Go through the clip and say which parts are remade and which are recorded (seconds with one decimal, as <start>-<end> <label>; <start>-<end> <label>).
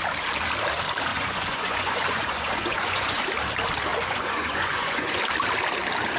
0.0-1.1 recorded; 1.1-3.2 remade; 3.2-3.9 recorded; 3.9-5.2 remade; 5.2-6.2 recorded